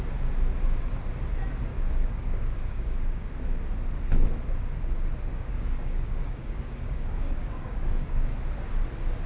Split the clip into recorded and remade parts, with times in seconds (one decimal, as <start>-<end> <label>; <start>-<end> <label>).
0.0-1.7 recorded; 1.7-3.3 remade; 3.3-5.3 recorded; 5.3-8.3 remade; 8.3-9.3 recorded

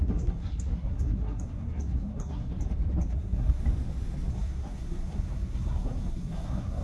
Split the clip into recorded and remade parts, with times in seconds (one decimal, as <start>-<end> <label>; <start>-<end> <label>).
0.0-2.5 remade; 2.5-3.1 recorded; 3.1-3.6 remade; 3.6-4.3 recorded; 4.3-6.8 remade

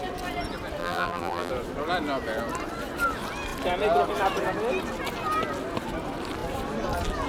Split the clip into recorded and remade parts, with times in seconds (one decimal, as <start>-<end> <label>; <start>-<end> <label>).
0.0-0.8 recorded; 0.8-1.5 remade; 1.5-7.3 recorded

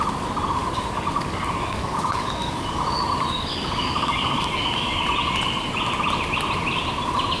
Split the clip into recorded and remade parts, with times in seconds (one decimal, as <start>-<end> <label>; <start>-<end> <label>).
0.0-0.6 recorded; 0.6-5.0 remade; 5.0-7.4 recorded

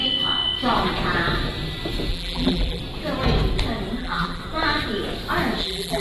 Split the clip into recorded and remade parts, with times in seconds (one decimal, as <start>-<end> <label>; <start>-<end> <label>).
0.0-2.1 recorded; 2.1-2.8 remade; 2.8-4.0 recorded; 4.0-4.4 remade; 4.4-5.6 recorded; 5.6-6.0 remade

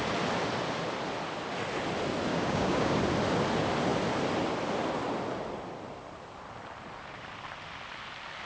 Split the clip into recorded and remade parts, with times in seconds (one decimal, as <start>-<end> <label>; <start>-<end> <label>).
0.0-2.3 recorded; 2.3-3.0 remade; 3.0-8.4 recorded

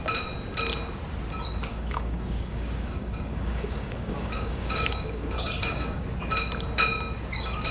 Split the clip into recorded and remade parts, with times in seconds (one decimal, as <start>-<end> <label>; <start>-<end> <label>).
0.0-1.7 recorded; 1.7-6.0 remade; 6.0-7.7 recorded